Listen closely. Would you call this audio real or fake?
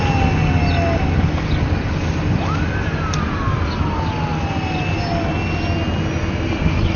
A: real